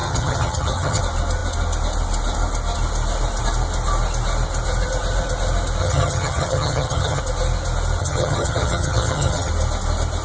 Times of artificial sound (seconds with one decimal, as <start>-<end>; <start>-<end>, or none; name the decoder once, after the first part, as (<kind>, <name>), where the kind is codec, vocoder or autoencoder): 0.0-1.0 (vocoder, HiFi-GAN); 5.8-7.2; 8.0-9.5